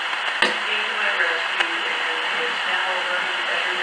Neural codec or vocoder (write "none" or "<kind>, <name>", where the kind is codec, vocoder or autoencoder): none